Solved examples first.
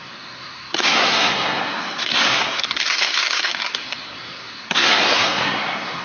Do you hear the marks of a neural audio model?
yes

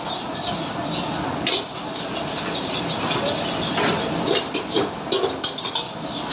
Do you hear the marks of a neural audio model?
no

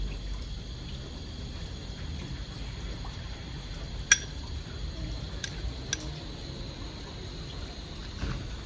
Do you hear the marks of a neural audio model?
no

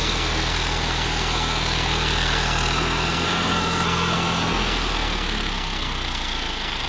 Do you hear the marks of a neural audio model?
yes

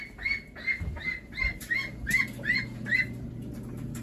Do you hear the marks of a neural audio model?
no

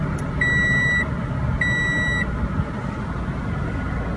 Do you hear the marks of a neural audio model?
no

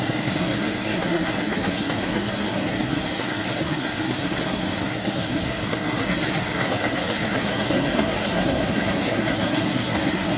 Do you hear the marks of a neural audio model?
yes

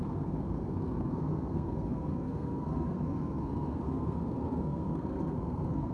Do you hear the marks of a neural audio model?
yes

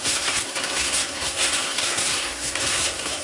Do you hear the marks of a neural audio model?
yes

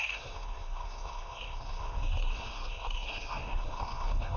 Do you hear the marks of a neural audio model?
yes